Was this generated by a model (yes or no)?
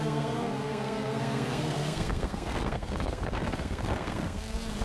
yes